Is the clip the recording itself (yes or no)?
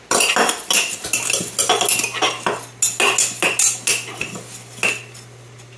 yes